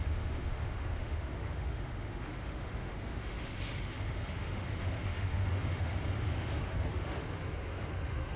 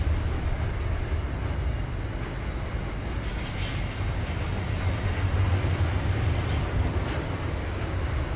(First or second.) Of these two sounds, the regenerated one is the first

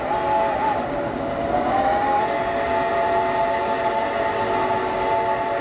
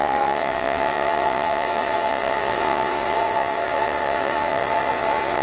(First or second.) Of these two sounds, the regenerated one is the second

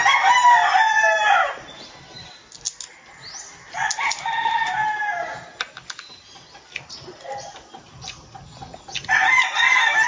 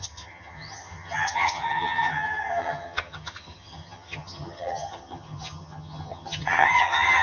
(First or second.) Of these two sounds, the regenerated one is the second